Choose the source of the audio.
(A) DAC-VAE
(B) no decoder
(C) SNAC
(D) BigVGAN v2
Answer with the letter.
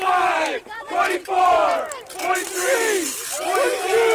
B